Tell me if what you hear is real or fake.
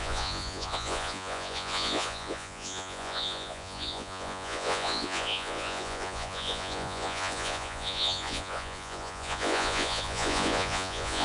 fake